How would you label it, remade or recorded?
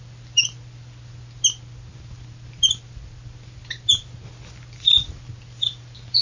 recorded